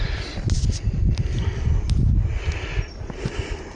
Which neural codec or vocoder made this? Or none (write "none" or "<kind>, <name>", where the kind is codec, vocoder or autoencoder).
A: none